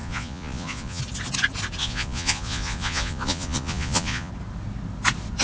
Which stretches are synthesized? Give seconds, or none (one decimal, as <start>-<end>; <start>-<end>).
0.0-1.0; 1.8-4.3